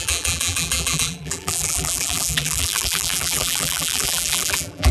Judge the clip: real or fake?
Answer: fake